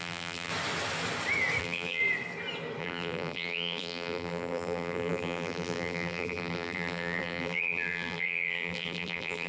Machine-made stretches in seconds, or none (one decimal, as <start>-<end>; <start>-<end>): 0.0-0.5; 1.6-2.0; 2.8-9.5